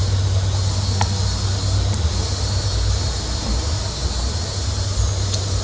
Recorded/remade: recorded